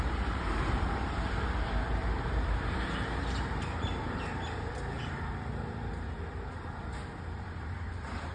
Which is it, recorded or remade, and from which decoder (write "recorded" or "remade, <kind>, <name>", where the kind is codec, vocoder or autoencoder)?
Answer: remade, vocoder, BigVGAN v2